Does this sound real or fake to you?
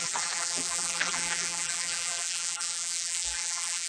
fake